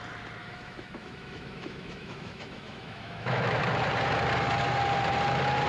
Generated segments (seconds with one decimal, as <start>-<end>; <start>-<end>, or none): 0.4-3.6

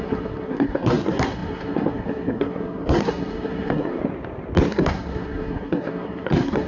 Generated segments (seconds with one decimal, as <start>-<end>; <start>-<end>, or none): 0.0-4.0; 4.7-6.7

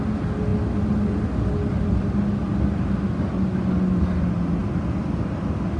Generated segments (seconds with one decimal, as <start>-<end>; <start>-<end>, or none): none